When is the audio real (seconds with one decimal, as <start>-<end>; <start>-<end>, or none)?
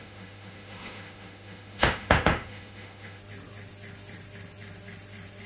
3.2-5.5